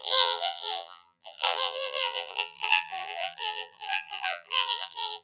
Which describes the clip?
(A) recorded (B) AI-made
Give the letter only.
B